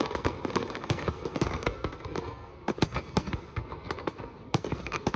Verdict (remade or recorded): remade